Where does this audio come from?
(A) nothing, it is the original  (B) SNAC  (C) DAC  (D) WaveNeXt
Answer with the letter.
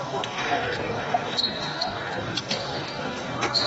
C